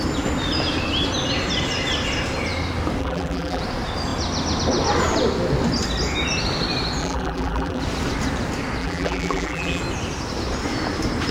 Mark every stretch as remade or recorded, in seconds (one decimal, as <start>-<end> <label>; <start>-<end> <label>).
0.0-3.0 recorded; 3.0-3.6 remade; 3.6-7.0 recorded; 7.0-7.8 remade; 7.8-8.8 recorded; 8.8-9.8 remade; 9.8-11.3 recorded